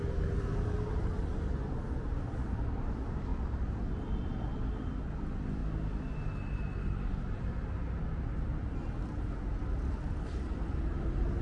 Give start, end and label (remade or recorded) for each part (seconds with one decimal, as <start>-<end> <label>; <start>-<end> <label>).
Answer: 0.0-11.4 recorded

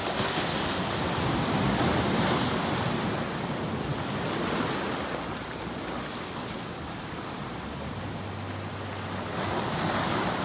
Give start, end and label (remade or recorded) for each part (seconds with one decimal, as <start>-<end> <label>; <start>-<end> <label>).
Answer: 0.0-10.4 recorded